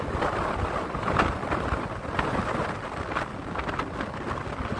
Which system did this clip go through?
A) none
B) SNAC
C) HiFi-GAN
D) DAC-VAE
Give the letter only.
A